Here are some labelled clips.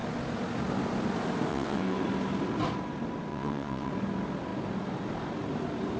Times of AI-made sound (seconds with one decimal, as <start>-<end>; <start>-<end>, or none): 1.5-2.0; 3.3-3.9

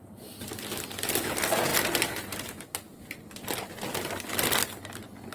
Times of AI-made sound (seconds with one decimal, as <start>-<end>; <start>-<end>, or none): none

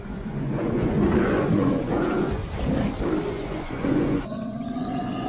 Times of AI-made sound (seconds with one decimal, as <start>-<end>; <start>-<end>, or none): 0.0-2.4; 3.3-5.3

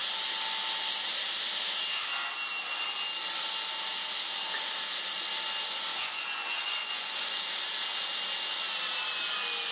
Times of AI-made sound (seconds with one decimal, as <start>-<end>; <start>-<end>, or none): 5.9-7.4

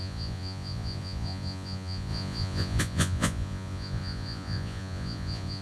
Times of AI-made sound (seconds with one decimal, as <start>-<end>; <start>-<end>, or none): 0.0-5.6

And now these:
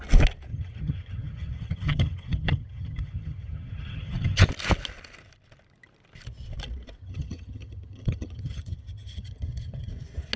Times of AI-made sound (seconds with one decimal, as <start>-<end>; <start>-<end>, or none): 0.5-4.5; 7.0-9.9